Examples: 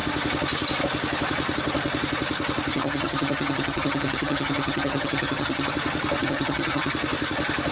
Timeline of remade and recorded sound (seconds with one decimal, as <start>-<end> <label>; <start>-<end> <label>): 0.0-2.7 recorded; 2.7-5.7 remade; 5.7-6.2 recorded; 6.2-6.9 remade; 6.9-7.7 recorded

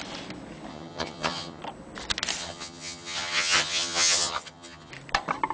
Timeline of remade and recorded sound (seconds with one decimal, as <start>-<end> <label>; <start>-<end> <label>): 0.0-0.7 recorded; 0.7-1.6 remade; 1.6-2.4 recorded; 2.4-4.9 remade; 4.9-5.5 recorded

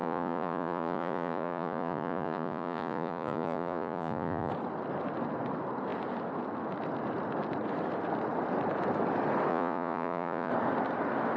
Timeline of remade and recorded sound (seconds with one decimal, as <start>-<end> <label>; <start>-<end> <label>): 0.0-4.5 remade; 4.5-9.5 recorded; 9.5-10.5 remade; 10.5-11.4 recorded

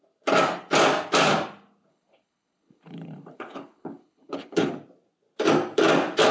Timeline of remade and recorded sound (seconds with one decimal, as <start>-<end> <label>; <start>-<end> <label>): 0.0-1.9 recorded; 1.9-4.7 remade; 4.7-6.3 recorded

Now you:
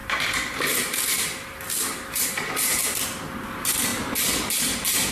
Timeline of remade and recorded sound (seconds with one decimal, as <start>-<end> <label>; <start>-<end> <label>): 0.0-2.8 remade; 2.8-3.4 recorded; 3.4-3.9 remade; 3.9-5.1 recorded